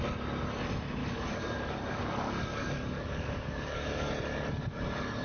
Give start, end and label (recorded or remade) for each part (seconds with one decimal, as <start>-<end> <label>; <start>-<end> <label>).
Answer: 0.0-1.0 recorded; 1.0-4.1 remade; 4.1-5.2 recorded